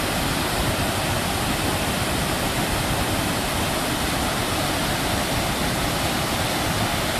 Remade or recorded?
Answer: remade